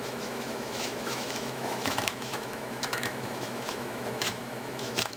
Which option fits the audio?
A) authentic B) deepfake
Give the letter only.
B